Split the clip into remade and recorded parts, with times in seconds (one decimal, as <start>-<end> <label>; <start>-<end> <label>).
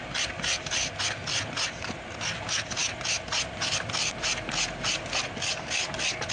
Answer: 0.0-6.3 recorded